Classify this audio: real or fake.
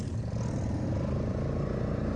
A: real